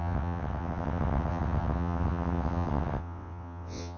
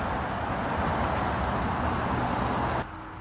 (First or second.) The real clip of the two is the second